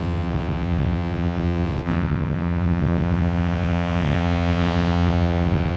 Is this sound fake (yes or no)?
yes